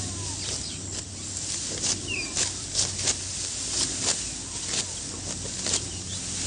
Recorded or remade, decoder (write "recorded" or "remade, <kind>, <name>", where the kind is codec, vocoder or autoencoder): recorded